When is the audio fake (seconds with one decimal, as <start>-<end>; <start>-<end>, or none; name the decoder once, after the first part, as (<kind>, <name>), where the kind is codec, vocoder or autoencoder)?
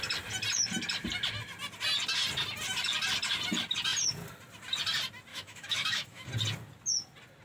5.3-6.3 (autoencoder, DAC-VAE)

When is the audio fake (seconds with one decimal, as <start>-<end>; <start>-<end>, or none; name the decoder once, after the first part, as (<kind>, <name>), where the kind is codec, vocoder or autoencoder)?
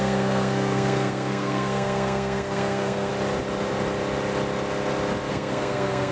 0.0-3.1 (codec, SNAC); 5.3-6.1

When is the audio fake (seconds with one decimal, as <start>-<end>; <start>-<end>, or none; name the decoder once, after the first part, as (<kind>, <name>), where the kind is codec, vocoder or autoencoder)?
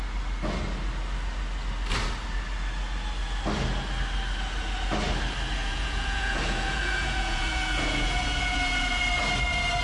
5.6-9.0 (vocoder, Vocos)